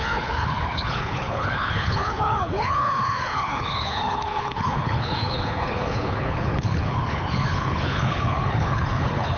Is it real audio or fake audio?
fake